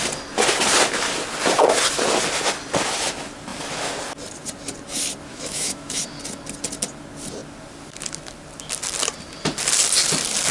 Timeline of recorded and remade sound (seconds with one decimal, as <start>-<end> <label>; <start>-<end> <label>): 0.0-5.3 recorded; 5.3-6.0 remade; 6.0-10.5 recorded